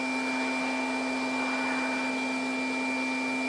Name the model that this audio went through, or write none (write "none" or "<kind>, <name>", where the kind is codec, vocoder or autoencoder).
none